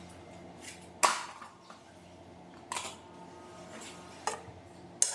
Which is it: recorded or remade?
recorded